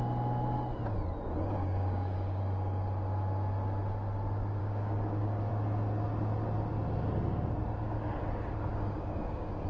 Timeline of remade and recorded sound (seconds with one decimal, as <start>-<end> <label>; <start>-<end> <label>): 0.0-1.6 recorded; 1.6-2.4 remade; 2.4-4.6 recorded; 4.6-5.5 remade; 5.5-8.7 recorded; 8.7-9.7 remade